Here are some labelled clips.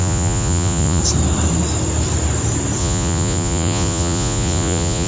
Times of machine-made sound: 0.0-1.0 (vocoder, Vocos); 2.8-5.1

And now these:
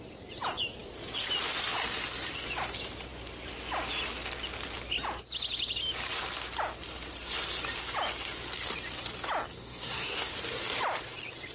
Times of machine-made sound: 9.5-10.3 (codec, SNAC)

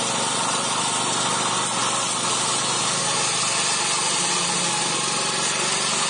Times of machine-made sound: none

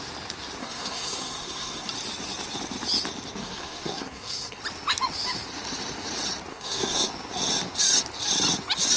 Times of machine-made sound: 0.6-1.9 (codec, SNAC); 3.4-4.6; 6.5-7.1

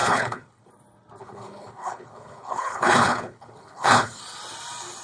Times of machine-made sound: 0.0-0.7 (codec, HILCodec); 1.2-4.2

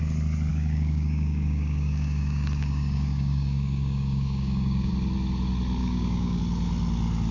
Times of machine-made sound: 0.5-4.9 (codec, DAC); 5.8-6.4